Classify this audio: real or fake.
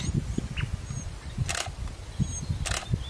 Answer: real